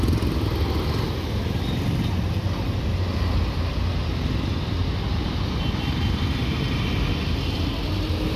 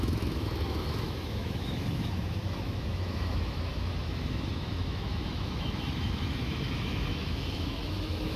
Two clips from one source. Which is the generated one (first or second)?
second